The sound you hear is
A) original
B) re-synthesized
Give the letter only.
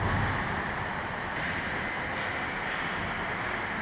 A